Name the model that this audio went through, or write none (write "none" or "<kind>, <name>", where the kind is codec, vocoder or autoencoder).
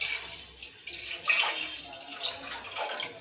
none